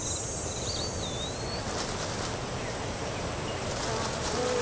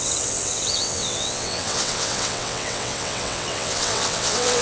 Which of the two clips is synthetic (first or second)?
second